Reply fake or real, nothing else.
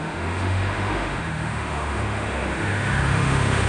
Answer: fake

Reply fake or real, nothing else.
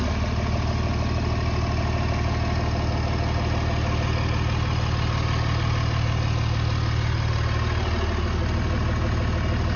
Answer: real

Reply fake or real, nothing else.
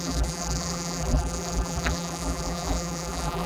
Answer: fake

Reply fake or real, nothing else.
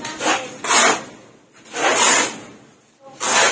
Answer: real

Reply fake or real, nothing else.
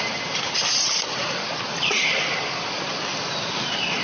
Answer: real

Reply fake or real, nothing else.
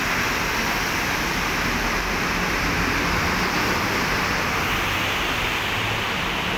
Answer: real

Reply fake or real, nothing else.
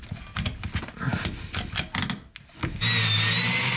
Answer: real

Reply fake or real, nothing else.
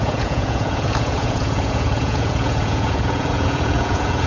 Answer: fake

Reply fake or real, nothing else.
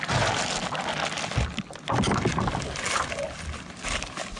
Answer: real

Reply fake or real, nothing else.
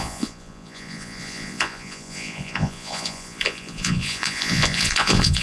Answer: fake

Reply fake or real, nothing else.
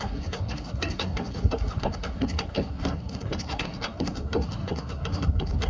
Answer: fake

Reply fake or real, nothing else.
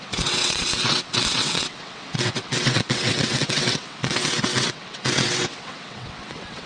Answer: fake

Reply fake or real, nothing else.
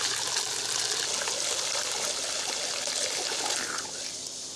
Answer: real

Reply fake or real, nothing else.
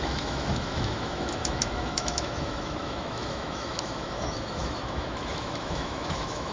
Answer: fake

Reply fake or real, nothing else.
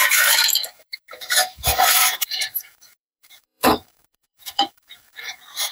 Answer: fake